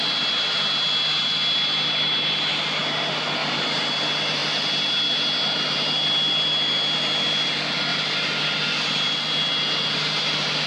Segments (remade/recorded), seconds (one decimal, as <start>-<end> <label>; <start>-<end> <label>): 0.0-3.4 recorded; 3.4-3.9 remade; 3.9-10.7 recorded